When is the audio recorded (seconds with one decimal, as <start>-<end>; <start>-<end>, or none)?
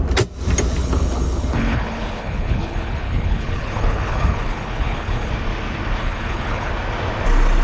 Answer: 0.0-0.8; 5.3-6.0; 6.7-7.6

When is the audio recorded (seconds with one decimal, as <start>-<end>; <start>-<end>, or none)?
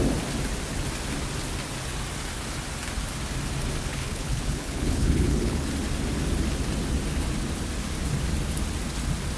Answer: 0.0-3.9; 5.7-9.4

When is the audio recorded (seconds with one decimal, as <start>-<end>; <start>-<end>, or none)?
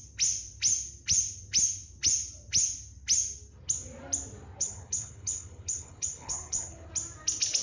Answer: 0.0-4.6; 6.9-7.6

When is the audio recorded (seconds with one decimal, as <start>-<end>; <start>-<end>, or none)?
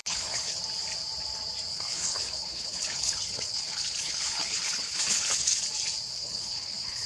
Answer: 0.6-1.7; 5.6-6.1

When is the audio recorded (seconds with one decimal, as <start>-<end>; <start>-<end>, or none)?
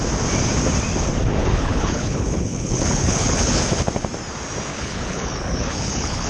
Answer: 0.0-1.4; 3.6-4.7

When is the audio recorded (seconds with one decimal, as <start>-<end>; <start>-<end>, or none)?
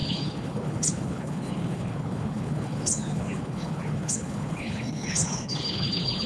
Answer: none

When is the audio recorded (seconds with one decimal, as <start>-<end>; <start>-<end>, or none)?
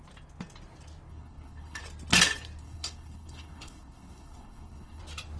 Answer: 0.0-1.1; 1.8-2.6; 5.0-5.4